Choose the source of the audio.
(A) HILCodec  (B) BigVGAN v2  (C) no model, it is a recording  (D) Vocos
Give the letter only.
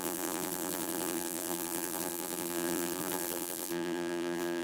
B